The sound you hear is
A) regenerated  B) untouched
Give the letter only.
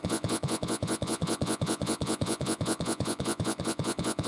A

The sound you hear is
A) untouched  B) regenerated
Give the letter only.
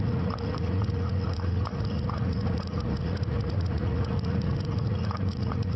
B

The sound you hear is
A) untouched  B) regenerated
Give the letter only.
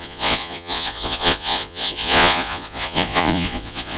B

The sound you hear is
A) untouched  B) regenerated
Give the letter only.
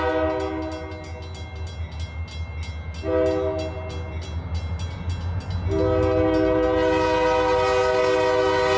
A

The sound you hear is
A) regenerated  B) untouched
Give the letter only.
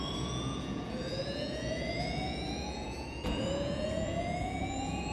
A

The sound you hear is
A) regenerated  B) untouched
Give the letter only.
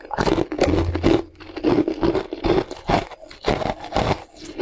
B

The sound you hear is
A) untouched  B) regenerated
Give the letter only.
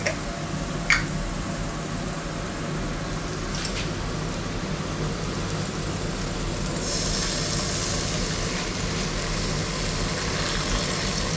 A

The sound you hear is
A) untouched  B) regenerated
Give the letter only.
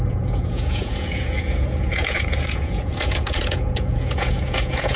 B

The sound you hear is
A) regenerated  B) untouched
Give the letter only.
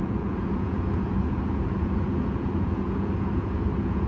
A